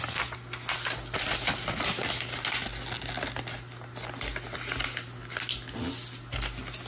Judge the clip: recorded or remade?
recorded